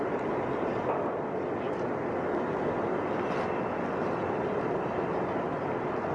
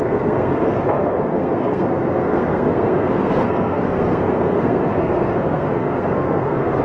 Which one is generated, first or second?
second